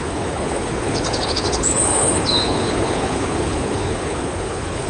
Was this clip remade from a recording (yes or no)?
yes